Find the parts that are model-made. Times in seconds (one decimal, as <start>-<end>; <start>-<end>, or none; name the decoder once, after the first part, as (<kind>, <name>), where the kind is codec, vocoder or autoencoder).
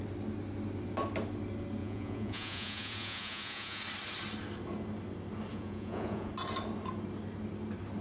1.8-3.8 (vocoder, Vocos); 5.5-6.3